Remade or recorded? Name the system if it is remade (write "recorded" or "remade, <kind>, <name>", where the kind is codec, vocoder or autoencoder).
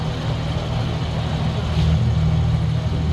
recorded